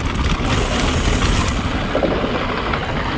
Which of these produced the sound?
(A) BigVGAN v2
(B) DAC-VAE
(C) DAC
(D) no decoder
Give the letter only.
D